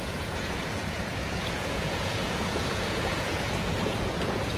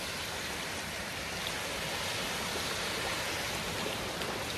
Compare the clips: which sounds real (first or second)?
second